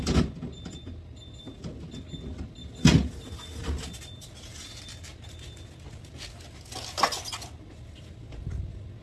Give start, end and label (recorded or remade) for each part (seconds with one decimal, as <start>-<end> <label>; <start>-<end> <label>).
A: 0.0-9.0 recorded

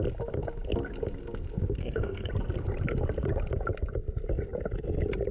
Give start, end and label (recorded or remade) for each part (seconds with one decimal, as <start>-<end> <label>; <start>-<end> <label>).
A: 0.0-1.8 recorded; 1.8-2.3 remade; 2.3-5.3 recorded

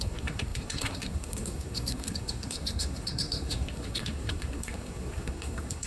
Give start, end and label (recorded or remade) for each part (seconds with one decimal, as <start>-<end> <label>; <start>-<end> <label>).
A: 0.0-5.9 remade

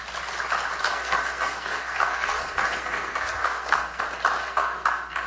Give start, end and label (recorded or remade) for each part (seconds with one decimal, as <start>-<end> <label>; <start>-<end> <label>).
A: 0.0-0.8 recorded; 0.8-4.0 remade; 4.0-4.4 recorded; 4.4-5.3 remade

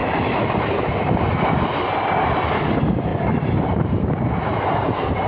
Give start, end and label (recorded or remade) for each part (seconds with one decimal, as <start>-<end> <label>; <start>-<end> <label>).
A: 0.0-5.3 recorded

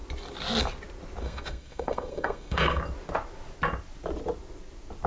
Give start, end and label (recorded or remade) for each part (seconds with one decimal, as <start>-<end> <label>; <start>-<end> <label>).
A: 0.0-1.2 recorded; 1.2-2.8 remade; 2.8-5.1 recorded

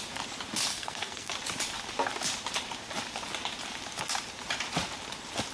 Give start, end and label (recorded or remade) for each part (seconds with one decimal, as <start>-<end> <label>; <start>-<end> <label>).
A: 0.0-0.7 recorded; 0.7-1.3 remade; 1.3-5.5 recorded